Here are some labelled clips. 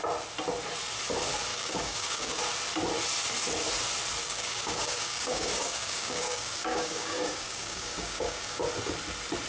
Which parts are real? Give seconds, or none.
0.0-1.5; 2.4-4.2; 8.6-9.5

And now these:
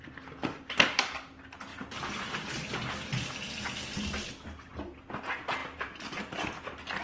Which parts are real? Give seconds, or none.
0.0-5.6; 6.2-7.0

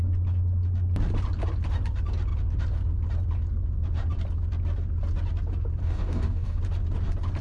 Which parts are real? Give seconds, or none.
0.0-5.8; 6.6-7.4

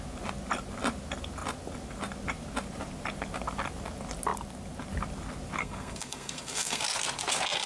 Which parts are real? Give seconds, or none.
0.0-5.6; 6.8-7.7

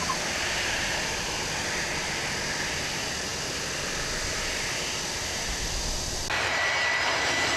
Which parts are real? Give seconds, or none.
0.0-7.6

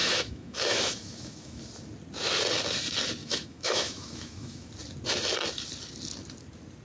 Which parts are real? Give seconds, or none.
1.6-3.2; 4.7-6.8

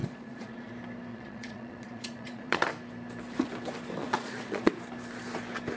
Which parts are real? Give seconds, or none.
0.7-1.1; 2.7-4.0; 4.7-5.8

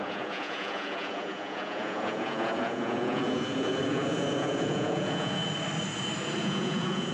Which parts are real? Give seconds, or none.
5.4-6.4